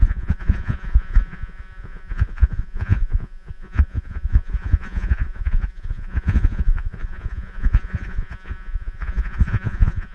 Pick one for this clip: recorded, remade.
remade